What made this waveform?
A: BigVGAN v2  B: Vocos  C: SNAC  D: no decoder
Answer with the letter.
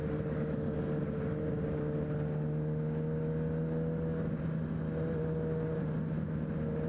D